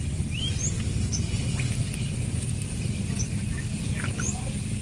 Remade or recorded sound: recorded